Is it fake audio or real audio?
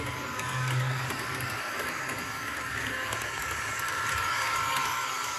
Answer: fake